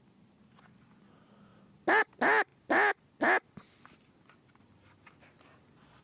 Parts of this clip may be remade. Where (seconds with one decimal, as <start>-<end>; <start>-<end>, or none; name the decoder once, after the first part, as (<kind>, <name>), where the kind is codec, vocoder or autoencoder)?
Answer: none